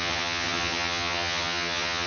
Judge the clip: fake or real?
fake